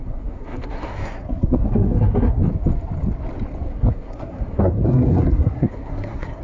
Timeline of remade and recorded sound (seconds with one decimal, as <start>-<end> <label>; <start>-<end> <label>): 0.0-2.4 remade; 2.4-3.7 recorded; 3.7-6.4 remade